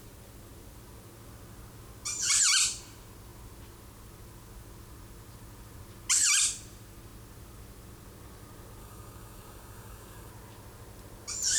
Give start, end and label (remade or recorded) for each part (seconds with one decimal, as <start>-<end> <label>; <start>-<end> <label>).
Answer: 0.0-8.8 recorded; 8.8-10.3 remade; 10.3-11.6 recorded